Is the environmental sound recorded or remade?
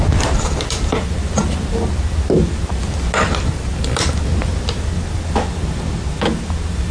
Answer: recorded